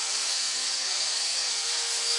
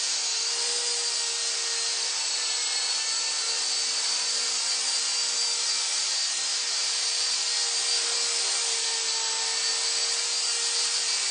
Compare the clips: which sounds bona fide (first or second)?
second